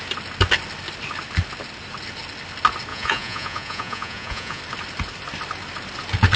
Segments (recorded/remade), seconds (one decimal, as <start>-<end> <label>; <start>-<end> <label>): 0.0-2.9 recorded; 2.9-4.6 remade; 4.6-6.4 recorded